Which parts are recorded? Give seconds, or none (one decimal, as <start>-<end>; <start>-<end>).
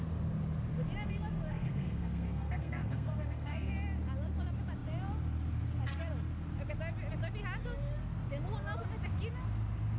0.0-1.5; 3.7-10.0